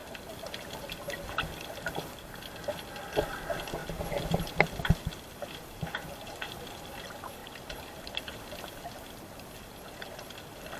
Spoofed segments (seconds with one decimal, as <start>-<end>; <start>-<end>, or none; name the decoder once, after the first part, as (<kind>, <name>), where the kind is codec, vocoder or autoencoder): none